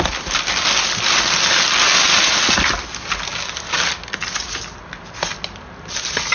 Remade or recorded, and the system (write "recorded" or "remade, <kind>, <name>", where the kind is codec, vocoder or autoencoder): recorded